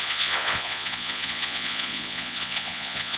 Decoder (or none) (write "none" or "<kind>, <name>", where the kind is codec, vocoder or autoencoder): vocoder, Vocos